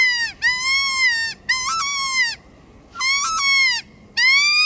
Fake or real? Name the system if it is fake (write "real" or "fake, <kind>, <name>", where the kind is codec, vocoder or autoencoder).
real